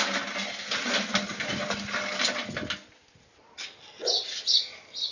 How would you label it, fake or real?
real